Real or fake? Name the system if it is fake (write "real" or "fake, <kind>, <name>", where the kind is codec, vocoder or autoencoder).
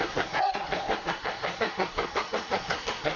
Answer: fake, codec, SNAC